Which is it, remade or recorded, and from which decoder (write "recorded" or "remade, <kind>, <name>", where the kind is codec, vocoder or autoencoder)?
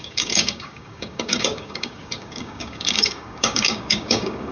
remade, codec, DAC